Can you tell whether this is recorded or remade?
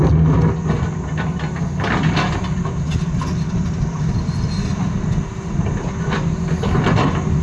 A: recorded